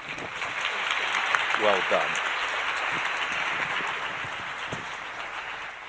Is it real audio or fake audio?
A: real